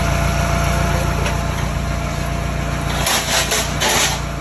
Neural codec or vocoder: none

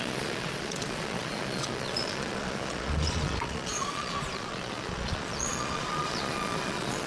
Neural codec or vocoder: vocoder, Vocos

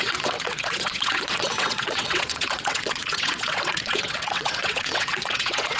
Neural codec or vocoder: vocoder, WaveNeXt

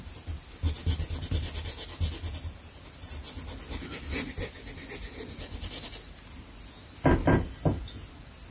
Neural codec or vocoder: none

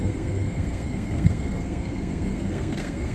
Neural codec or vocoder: codec, SNAC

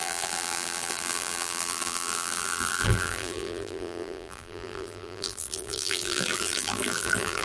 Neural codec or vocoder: vocoder, BigVGAN v2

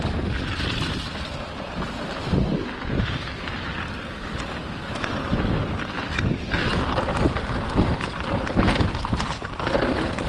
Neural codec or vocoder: none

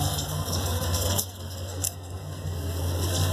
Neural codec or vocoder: codec, SNAC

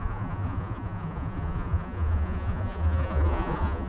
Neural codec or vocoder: vocoder, Vocos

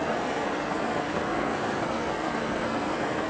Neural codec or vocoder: codec, SNAC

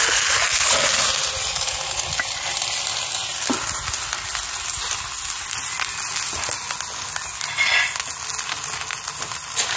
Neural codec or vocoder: none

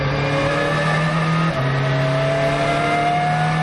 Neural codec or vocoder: none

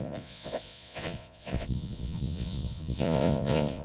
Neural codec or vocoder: vocoder, Vocos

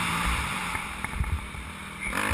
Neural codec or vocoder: none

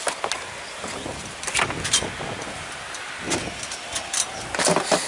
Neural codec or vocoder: none